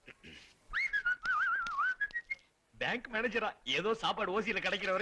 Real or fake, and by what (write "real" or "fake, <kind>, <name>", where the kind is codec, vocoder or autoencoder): real